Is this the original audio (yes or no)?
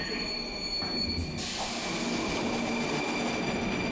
yes